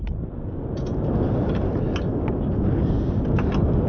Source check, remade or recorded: recorded